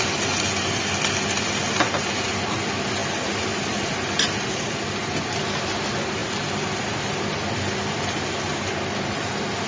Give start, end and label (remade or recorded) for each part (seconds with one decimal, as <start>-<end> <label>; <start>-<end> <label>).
0.0-9.7 recorded